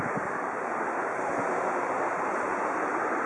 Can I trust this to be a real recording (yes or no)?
no